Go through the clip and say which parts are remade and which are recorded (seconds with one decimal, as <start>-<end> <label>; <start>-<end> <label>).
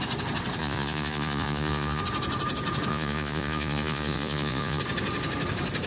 0.0-0.6 recorded; 0.6-2.0 remade; 2.0-2.9 recorded; 2.9-4.8 remade; 4.8-5.9 recorded